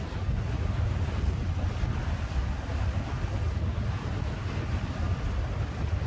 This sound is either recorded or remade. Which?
recorded